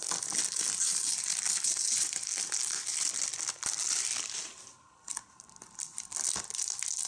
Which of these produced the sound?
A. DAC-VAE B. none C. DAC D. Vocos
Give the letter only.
B